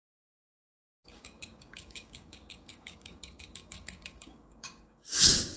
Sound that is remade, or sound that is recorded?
remade